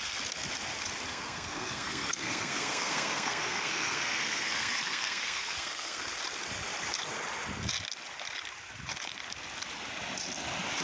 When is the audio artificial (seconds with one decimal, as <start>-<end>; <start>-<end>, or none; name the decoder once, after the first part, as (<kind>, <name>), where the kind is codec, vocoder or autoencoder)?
1.1-6.0 (codec, SNAC)